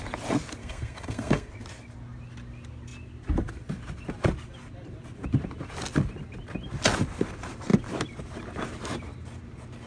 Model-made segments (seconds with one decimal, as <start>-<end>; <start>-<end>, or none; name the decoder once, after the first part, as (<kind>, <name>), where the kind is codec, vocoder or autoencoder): 0.6-1.5 (codec, SNAC)